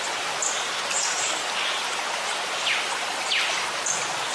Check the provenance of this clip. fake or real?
real